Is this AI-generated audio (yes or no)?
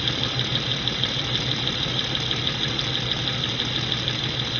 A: no